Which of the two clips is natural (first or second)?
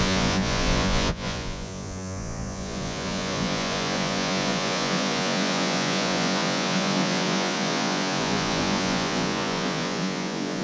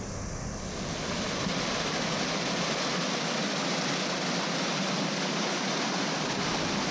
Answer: second